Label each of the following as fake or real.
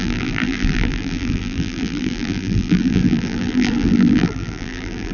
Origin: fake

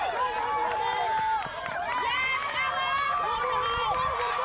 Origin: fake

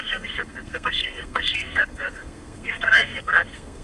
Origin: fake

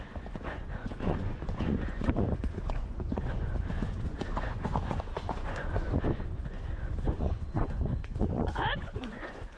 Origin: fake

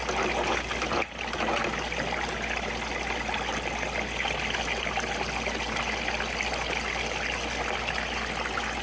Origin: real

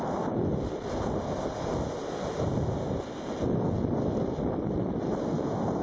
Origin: real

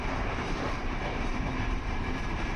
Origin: fake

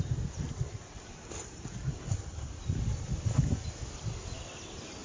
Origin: real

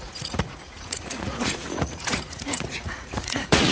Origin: fake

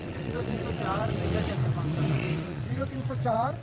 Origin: fake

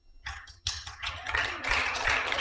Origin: fake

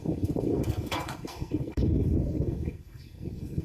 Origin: fake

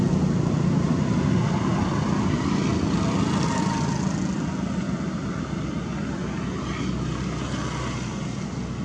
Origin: real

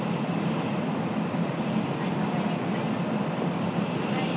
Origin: real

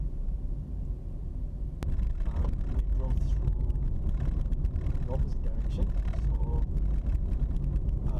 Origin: real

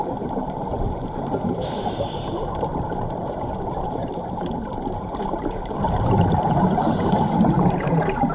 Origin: fake